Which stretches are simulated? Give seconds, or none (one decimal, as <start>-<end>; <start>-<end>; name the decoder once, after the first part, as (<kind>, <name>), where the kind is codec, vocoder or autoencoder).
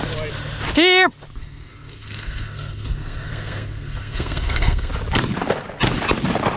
1.4-4.9 (codec, SNAC)